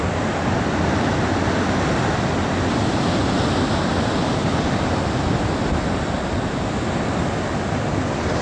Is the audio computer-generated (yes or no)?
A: no